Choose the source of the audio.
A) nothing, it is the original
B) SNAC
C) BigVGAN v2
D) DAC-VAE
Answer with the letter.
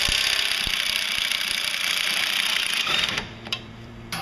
C